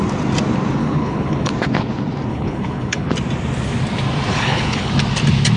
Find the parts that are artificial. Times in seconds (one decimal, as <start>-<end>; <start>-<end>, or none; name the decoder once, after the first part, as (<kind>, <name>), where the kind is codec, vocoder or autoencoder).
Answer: 0.8-1.5 (codec, HILCodec); 2.3-3.1; 4.3-4.9